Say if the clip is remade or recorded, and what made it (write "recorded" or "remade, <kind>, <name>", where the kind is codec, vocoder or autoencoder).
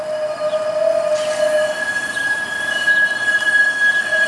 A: recorded